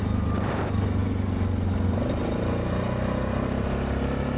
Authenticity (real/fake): real